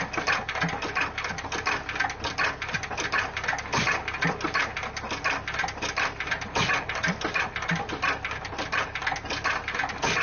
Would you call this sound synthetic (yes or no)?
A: no